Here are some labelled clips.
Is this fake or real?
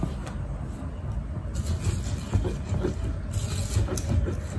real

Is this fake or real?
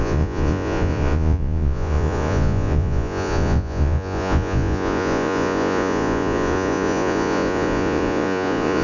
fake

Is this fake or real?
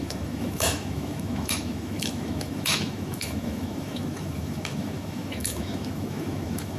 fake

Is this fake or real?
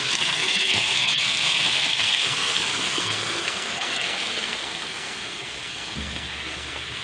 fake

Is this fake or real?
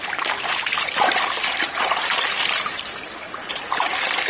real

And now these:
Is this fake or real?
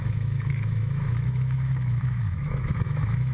fake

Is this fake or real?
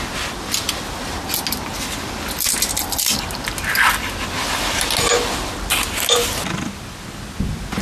real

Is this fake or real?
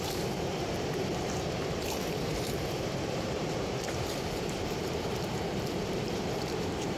fake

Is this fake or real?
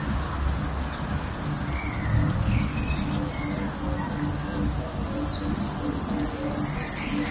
real